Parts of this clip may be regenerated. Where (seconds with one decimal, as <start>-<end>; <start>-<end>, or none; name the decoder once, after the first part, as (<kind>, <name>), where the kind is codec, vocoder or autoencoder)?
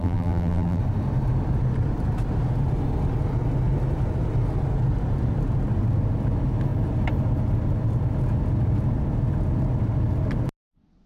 0.0-0.8 (vocoder, BigVGAN v2)